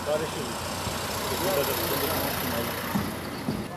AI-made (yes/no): no